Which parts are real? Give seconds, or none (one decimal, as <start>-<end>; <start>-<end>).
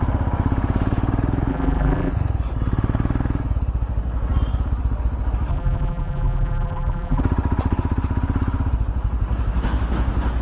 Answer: 0.0-1.5; 2.1-5.5; 7.2-10.4